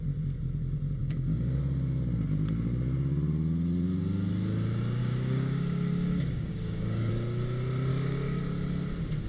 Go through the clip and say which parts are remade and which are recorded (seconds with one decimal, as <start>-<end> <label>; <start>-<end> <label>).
0.0-1.0 recorded; 1.0-1.6 remade; 1.6-5.0 recorded; 5.0-7.1 remade; 7.1-7.9 recorded; 7.9-8.4 remade; 8.4-9.3 recorded